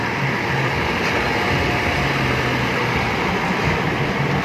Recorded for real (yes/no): yes